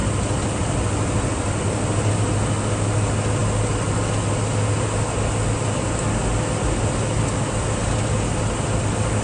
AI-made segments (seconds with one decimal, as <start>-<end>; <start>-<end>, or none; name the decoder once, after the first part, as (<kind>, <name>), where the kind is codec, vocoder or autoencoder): none